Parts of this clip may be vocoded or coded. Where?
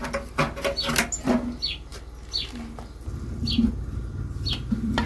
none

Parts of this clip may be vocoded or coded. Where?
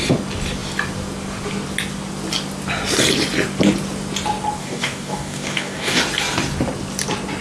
4.6-6.0 (codec, DAC)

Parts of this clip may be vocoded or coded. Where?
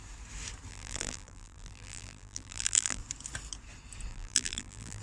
0.7-3.0 (vocoder, BigVGAN v2); 4.1-5.0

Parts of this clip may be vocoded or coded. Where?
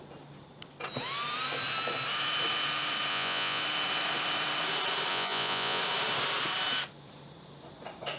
3.1-3.6 (vocoder, Vocos); 5.1-5.8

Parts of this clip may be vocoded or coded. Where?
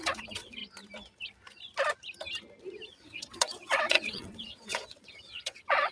0.0-0.6 (vocoder, WaveNeXt); 2.9-5.9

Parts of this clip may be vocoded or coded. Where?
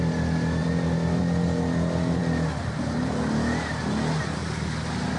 none